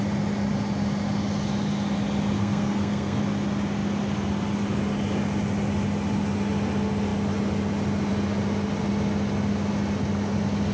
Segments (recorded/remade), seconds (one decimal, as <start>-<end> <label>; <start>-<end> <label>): 0.0-2.4 recorded; 2.4-3.2 remade; 3.2-10.7 recorded